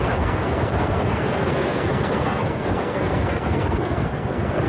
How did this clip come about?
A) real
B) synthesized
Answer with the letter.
B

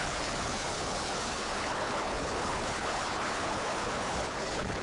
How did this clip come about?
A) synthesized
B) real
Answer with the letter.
A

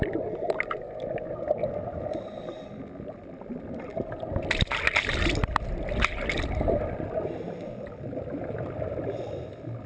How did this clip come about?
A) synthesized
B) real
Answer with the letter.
B